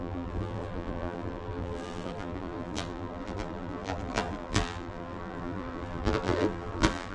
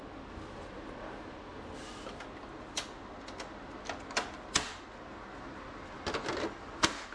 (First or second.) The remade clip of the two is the first